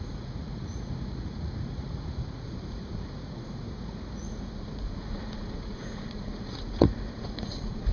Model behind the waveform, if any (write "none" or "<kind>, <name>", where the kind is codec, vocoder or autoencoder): vocoder, Vocos